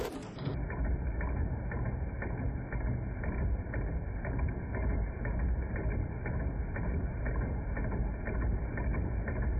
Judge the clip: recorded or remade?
recorded